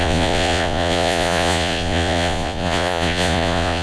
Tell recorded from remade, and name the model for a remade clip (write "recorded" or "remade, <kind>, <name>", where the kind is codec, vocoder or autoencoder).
remade, vocoder, Vocos